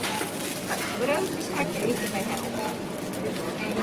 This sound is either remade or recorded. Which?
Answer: recorded